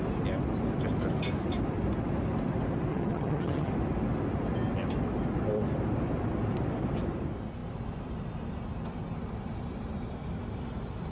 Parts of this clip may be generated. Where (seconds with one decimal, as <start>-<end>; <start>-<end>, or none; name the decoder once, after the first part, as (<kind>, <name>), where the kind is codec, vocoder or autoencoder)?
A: 2.9-3.7 (vocoder, HiFi-GAN)